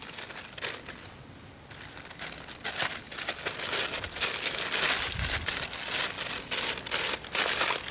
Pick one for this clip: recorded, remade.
recorded